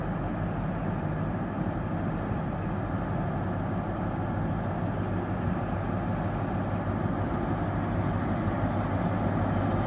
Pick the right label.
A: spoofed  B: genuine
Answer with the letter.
B